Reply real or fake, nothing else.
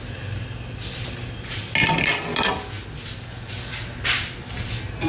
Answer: real